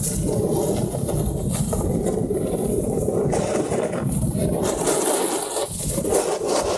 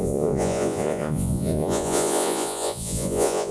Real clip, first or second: first